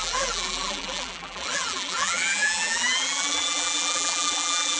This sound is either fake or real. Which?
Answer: fake